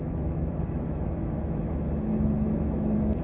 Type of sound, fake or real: fake